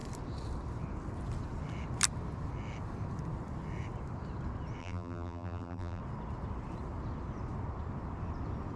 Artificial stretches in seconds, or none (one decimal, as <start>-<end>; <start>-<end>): 4.8-6.0